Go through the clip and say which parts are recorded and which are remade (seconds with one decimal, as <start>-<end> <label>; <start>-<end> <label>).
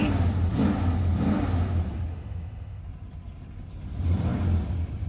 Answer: 0.0-2.1 recorded; 2.1-2.8 remade; 2.8-5.1 recorded